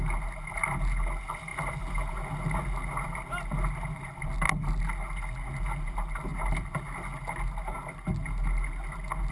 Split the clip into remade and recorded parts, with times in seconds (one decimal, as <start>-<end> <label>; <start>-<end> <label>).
0.0-1.5 recorded; 1.5-2.1 remade; 2.1-9.3 recorded